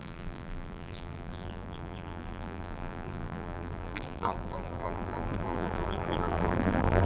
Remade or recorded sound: remade